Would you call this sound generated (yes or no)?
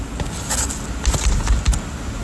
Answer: no